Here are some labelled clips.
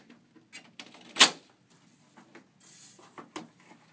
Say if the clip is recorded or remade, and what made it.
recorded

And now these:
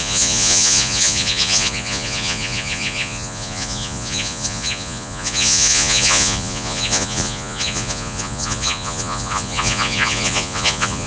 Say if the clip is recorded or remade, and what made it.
remade, vocoder, Vocos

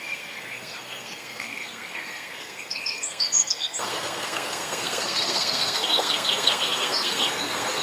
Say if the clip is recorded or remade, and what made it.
remade, codec, SNAC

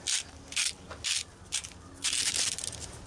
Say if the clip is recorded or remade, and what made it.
recorded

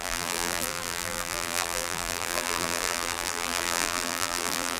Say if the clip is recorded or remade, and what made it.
remade, vocoder, BigVGAN v2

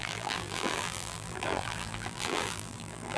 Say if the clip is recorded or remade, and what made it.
remade, vocoder, BigVGAN v2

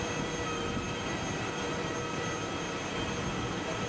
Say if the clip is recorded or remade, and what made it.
recorded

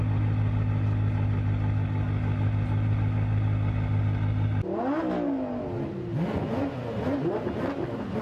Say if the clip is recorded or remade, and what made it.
recorded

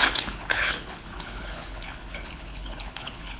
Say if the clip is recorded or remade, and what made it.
remade, codec, HILCodec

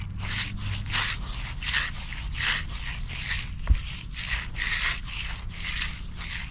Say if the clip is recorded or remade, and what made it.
recorded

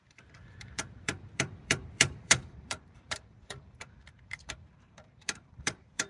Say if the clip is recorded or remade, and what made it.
remade, vocoder, BigVGAN v2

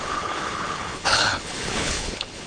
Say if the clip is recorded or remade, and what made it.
remade, codec, HILCodec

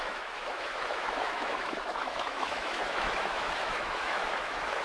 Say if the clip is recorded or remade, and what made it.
remade, autoencoder, DAC-VAE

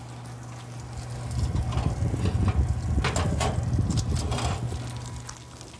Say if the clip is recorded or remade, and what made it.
recorded